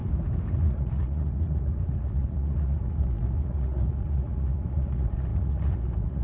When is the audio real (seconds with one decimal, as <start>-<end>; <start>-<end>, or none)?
0.0-0.5